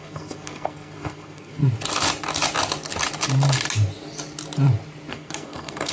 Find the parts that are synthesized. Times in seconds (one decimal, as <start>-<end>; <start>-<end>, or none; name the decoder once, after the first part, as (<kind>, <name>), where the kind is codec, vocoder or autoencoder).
0.0-1.6 (codec, SNAC); 5.1-5.9

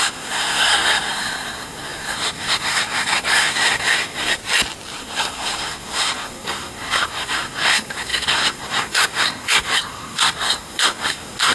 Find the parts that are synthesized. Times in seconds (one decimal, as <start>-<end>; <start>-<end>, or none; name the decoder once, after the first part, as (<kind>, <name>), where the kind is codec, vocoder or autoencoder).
0.0-4.4 (codec, SNAC); 5.0-11.5

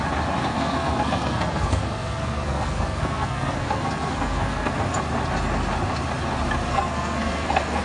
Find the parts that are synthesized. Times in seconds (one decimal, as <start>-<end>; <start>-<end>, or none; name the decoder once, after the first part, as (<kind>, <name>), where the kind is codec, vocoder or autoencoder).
0.5-4.7 (codec, SNAC); 6.7-7.8

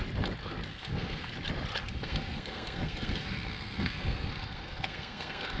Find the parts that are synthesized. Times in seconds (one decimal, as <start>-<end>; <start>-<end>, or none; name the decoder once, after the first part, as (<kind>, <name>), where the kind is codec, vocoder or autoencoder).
0.7-1.3 (codec, SNAC); 1.8-5.6

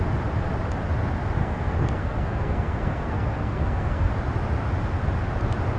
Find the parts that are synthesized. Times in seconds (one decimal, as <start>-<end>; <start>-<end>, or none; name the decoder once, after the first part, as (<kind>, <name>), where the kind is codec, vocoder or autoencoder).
1.4-4.1 (codec, SNAC)

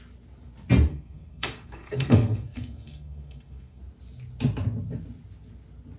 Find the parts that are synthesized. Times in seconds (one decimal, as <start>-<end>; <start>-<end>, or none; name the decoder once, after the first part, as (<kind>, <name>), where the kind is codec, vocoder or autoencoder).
0.9-3.8 (codec, SNAC)

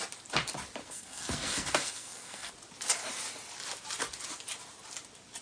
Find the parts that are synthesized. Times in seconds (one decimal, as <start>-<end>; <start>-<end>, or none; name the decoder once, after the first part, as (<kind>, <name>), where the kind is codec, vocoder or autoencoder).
0.8-2.5 (codec, SNAC)

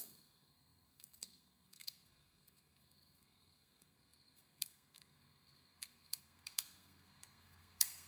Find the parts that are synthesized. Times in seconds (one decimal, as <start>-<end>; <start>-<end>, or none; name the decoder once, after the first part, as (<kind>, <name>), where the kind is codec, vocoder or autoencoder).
0.0-8.1 (codec, SNAC)